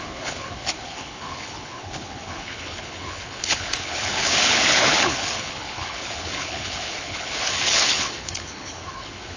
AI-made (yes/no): yes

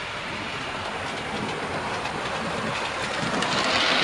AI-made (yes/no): no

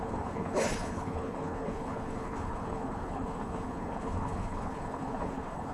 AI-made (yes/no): yes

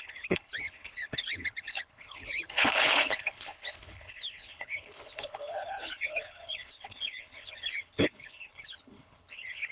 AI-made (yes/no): yes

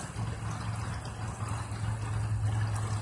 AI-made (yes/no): no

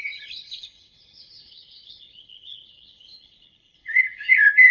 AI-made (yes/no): yes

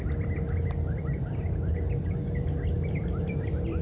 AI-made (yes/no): no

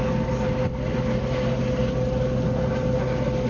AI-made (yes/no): no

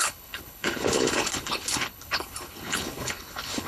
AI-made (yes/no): yes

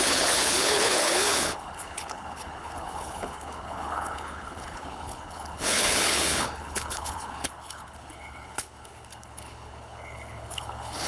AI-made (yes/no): yes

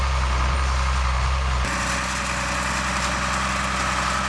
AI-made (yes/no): no